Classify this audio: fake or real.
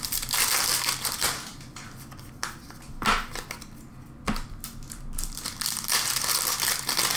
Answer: real